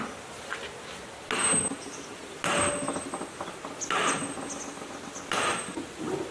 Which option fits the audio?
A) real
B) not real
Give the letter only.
A